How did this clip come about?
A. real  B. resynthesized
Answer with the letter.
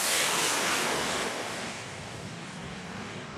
B